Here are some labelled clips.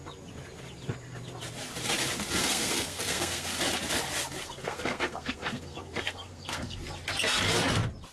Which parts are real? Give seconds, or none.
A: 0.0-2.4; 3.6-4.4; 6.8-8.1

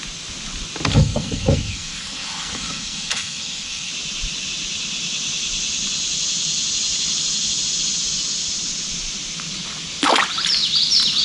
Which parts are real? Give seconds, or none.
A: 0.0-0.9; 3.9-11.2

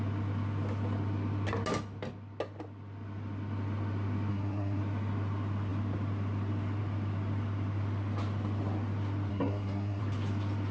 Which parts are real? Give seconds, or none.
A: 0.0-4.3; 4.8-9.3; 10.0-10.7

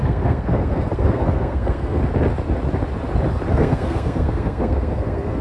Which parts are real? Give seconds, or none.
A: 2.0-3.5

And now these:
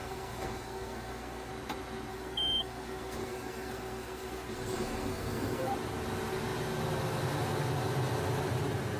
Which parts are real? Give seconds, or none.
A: 1.5-2.1; 5.7-9.0

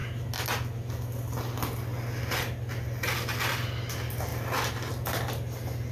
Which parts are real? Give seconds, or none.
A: 0.0-5.9